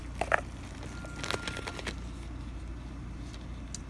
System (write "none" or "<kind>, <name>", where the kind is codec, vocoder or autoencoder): none